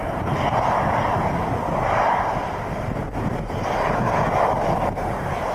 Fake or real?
real